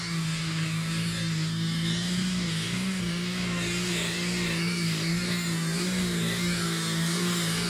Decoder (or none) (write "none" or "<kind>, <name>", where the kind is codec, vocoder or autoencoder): codec, DAC